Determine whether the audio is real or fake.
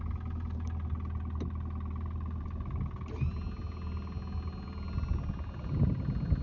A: real